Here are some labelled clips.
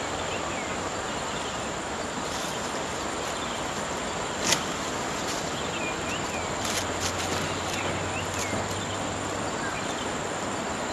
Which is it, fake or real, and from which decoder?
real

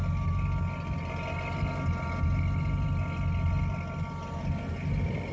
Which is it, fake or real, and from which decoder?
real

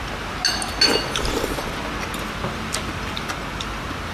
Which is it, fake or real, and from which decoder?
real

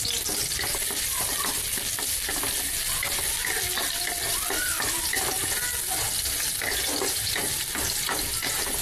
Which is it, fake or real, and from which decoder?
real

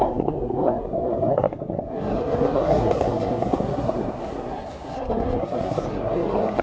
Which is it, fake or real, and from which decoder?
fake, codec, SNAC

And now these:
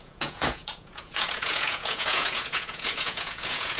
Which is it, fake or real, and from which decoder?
fake, vocoder, Vocos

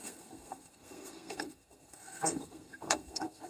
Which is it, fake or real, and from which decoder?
fake, codec, SNAC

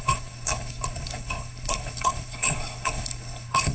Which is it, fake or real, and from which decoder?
fake, codec, HILCodec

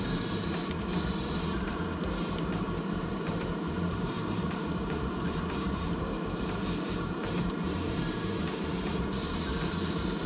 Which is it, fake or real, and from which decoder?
fake, vocoder, BigVGAN v2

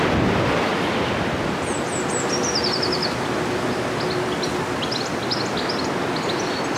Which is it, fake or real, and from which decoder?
real